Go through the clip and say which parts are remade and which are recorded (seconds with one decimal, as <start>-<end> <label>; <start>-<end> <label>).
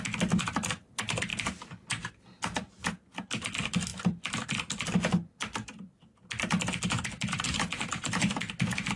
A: 0.0-9.0 recorded